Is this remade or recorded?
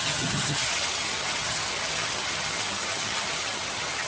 remade